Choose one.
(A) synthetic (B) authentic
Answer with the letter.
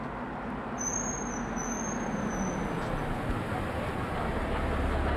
B